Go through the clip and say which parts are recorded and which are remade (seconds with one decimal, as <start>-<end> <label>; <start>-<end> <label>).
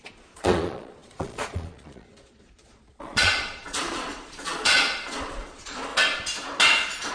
0.0-5.9 remade; 5.9-7.1 recorded